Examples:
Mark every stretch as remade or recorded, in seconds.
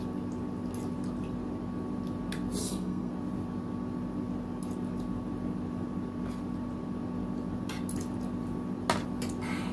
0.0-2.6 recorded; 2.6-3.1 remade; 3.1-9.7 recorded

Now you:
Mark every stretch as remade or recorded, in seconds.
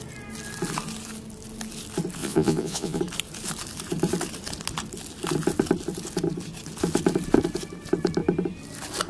0.0-2.2 recorded; 2.2-3.0 remade; 3.0-9.1 recorded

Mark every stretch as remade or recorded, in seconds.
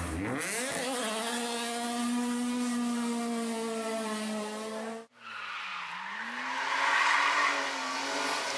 0.0-8.6 recorded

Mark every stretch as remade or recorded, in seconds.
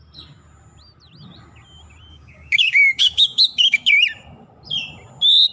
0.0-2.1 recorded; 2.1-3.9 remade; 3.9-5.5 recorded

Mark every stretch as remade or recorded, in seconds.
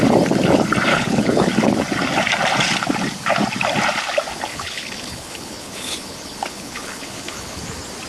0.0-0.9 recorded; 0.9-1.5 remade; 1.5-4.5 recorded; 4.5-7.6 remade; 7.6-8.1 recorded